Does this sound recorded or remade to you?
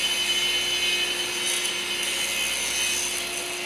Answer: recorded